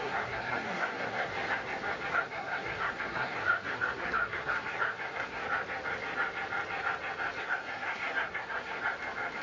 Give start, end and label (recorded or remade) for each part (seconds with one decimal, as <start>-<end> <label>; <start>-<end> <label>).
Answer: 0.0-1.3 remade; 1.3-2.1 recorded; 2.1-5.4 remade; 5.4-7.4 recorded; 7.4-8.8 remade; 8.8-9.4 recorded